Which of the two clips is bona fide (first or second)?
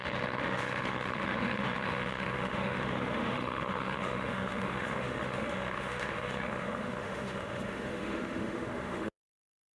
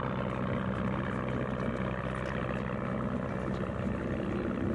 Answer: second